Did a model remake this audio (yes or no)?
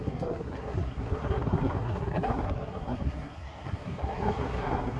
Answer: yes